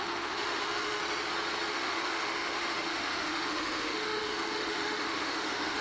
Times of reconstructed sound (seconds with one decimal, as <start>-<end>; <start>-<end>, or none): 0.0-1.0; 1.7-5.8